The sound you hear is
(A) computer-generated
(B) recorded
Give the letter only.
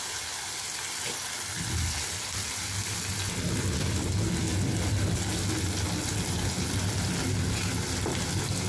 B